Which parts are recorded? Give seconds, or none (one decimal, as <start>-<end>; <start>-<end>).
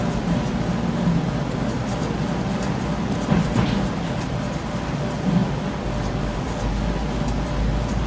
0.0-8.1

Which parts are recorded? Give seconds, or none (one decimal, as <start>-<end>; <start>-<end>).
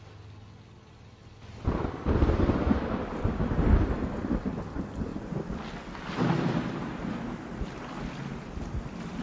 0.0-1.2; 3.0-5.1; 5.6-9.2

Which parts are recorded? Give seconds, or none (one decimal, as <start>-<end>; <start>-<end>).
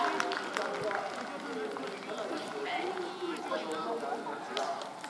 0.0-5.1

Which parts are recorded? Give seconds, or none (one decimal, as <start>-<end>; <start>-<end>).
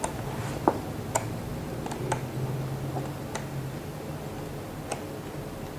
0.0-5.8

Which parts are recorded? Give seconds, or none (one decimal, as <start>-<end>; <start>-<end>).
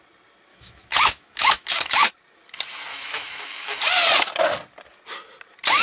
0.0-0.5; 2.1-2.9; 3.8-5.8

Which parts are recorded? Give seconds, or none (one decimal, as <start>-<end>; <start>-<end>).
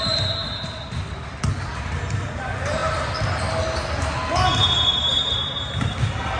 0.0-6.4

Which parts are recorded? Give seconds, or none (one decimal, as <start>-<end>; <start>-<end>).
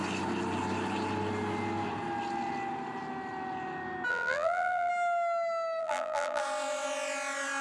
0.0-4.1; 4.9-5.8; 6.4-7.6